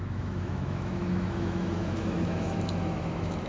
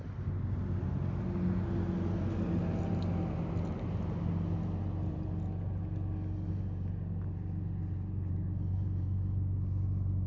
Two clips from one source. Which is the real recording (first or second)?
second